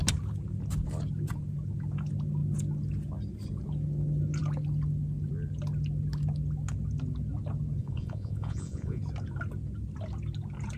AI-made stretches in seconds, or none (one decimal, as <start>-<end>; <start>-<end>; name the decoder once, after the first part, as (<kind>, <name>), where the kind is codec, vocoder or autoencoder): 7.8-9.0 (vocoder, Vocos)